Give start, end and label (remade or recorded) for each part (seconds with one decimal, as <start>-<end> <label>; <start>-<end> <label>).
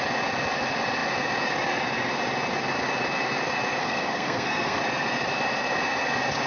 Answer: 0.0-3.8 recorded; 3.8-4.8 remade; 4.8-6.5 recorded